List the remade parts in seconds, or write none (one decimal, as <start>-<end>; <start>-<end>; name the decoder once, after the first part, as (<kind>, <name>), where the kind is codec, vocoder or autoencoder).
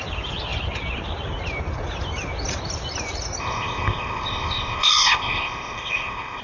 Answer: 3.4-6.4 (codec, ZipCodec)